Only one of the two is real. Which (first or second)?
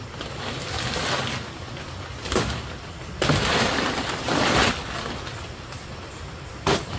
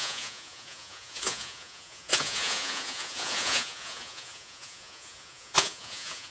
first